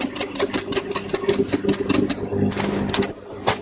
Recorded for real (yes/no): yes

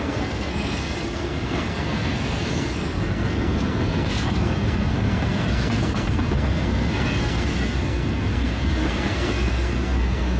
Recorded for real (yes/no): no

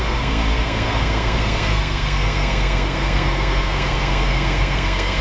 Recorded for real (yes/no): no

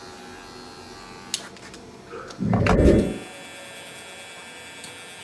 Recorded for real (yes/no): yes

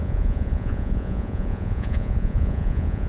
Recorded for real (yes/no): no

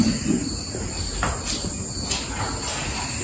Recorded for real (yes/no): yes